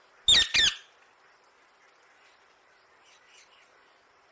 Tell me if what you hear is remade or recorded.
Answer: recorded